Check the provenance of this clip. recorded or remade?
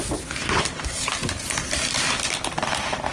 recorded